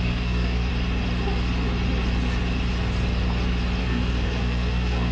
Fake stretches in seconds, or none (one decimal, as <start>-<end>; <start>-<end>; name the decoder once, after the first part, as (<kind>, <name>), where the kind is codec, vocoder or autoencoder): 0.0-0.7 (codec, SNAC); 3.8-5.1